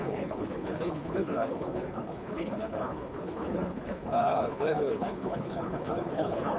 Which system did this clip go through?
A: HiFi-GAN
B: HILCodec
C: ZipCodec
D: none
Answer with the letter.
B